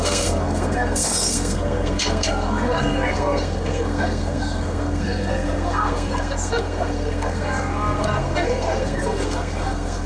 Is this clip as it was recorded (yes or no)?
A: no